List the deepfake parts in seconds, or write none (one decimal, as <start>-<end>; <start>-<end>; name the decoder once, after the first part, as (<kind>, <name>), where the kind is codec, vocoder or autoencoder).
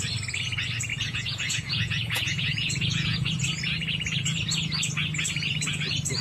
0.9-3.4 (vocoder, Vocos)